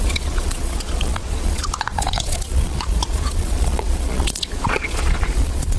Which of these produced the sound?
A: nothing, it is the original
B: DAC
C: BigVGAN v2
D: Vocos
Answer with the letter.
D